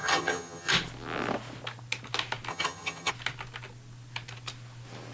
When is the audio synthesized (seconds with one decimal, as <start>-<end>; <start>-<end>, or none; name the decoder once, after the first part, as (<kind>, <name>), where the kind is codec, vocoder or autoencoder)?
0.0-0.7 (vocoder, HiFi-GAN); 2.5-3.1